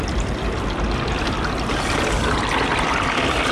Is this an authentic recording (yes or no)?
yes